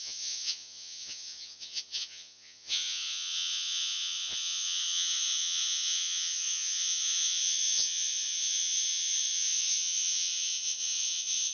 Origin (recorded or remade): remade